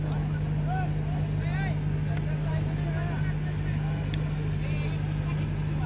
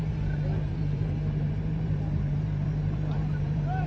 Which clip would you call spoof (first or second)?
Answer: second